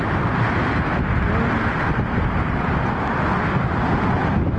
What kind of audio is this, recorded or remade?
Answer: recorded